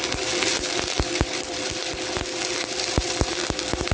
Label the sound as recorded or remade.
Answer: recorded